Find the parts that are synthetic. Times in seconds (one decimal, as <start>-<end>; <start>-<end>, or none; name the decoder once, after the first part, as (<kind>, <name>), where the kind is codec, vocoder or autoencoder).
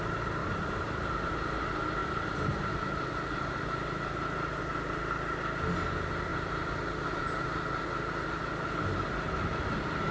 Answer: 0.4-1.3 (vocoder, BigVGAN v2); 2.0-4.6; 6.3-7.2